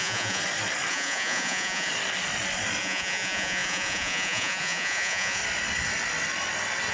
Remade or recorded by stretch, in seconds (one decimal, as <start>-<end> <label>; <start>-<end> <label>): 0.0-0.4 remade; 0.4-0.9 recorded; 0.9-1.9 remade; 1.9-2.8 recorded; 2.8-5.4 remade; 5.4-6.9 recorded